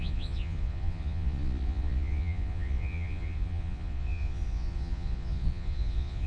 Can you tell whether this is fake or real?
fake